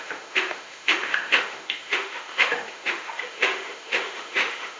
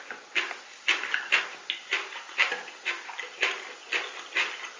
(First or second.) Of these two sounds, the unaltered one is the second